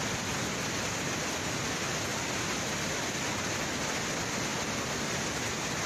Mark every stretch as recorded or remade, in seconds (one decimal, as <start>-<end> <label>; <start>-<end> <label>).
0.0-2.1 recorded; 2.1-3.2 remade; 3.2-5.9 recorded